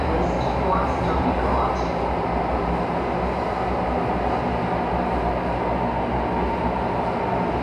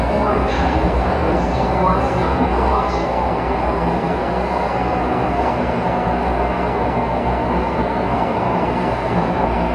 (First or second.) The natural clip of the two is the first